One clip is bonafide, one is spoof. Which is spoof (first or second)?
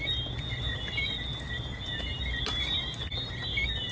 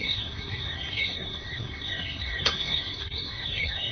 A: second